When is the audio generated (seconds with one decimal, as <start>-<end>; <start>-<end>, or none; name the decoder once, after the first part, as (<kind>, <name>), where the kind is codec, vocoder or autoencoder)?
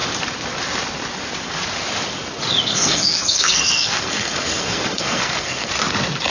2.7-5.7 (codec, SNAC)